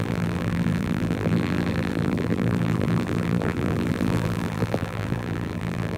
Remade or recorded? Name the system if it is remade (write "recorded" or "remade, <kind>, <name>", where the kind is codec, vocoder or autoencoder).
remade, vocoder, BigVGAN v2